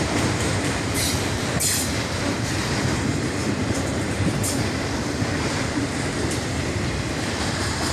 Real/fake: fake